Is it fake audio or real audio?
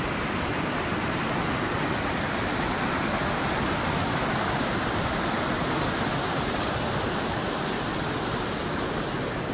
real